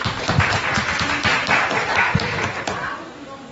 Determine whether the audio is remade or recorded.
recorded